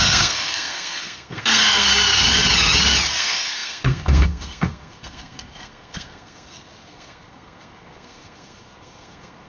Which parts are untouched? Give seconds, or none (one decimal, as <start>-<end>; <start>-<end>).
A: 1.9-3.2